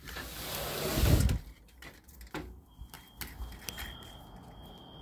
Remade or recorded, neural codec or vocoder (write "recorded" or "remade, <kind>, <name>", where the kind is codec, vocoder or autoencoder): recorded